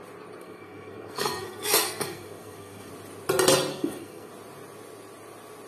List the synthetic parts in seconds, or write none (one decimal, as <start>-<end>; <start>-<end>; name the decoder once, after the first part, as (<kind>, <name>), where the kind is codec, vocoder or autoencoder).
0.4-2.9 (codec, SNAC); 3.7-4.3